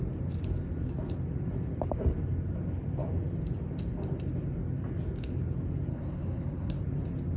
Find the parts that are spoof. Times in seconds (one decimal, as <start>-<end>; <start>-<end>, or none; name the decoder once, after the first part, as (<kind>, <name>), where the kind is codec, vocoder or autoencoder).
5.9-6.8 (codec, HILCodec)